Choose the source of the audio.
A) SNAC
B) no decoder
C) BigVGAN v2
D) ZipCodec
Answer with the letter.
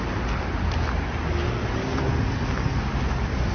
B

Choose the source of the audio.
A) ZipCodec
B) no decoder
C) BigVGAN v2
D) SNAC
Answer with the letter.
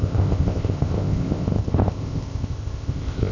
A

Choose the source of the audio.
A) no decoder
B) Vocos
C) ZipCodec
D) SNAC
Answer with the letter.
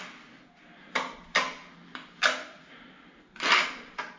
A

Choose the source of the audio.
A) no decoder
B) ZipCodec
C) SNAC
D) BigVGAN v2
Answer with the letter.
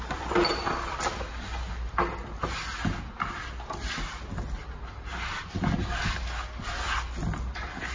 A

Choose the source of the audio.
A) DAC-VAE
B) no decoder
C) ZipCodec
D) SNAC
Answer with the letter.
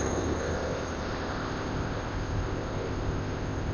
C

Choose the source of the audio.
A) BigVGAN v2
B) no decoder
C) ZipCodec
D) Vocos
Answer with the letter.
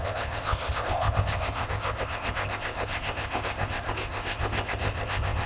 C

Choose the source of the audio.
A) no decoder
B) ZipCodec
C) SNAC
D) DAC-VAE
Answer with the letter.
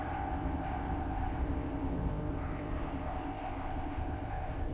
B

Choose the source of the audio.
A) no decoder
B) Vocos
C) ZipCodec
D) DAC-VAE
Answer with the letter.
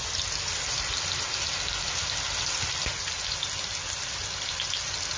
A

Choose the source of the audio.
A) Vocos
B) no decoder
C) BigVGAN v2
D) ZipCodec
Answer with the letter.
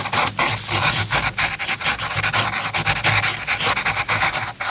B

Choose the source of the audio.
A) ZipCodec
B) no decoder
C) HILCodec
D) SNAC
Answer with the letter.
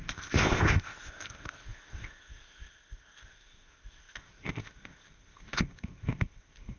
A